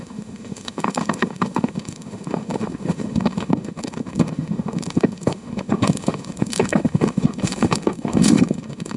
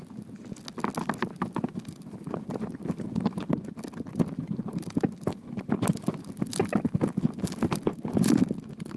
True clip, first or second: second